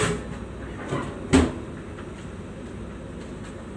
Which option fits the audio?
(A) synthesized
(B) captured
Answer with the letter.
B